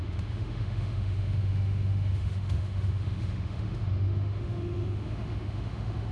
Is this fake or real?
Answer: fake